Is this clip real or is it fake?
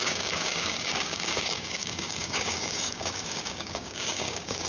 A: fake